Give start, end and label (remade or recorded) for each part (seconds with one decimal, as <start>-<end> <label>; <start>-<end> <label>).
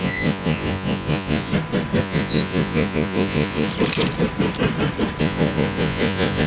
0.0-1.5 remade; 1.5-2.0 recorded; 2.0-3.7 remade; 3.7-5.2 recorded; 5.2-6.5 remade